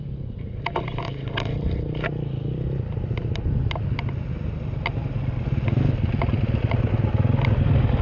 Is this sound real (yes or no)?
yes